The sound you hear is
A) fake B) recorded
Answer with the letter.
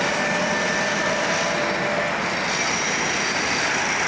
B